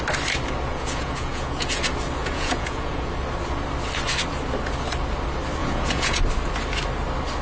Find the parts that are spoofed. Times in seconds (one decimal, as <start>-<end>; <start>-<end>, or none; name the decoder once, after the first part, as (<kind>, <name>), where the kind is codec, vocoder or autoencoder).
0.7-1.8 (vocoder, Vocos); 2.2-3.1; 5.6-6.2